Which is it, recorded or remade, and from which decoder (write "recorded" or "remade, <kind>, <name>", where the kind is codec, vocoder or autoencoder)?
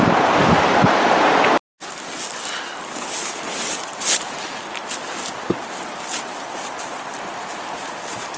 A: recorded